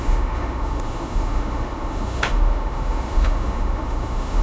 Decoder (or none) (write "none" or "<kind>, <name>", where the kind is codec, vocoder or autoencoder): autoencoder, DAC-VAE